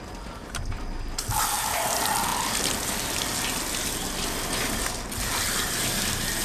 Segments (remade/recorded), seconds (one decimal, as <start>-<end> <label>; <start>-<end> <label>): 0.0-6.4 recorded